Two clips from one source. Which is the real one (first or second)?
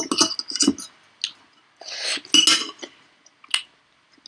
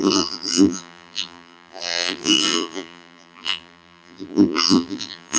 first